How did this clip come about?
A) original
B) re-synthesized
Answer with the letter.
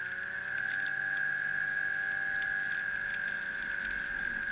A